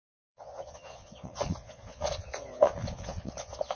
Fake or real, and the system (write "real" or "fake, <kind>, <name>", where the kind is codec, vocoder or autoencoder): fake, vocoder, Vocos